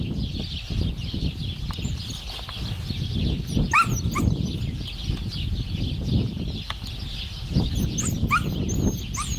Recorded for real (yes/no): yes